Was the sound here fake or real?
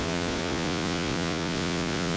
fake